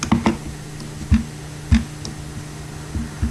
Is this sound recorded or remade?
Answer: recorded